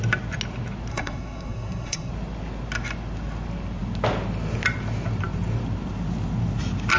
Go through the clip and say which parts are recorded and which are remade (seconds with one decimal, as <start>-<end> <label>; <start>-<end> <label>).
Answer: 0.0-0.9 recorded; 0.9-2.1 remade; 2.1-7.0 recorded